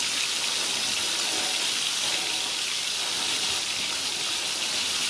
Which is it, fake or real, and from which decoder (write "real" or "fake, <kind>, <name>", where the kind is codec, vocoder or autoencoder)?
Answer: real